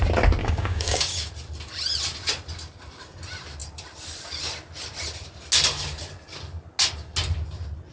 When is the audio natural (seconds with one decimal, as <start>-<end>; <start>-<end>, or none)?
0.0-0.4; 1.3-7.9